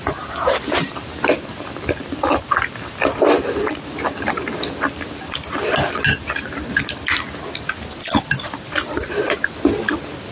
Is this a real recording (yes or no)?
yes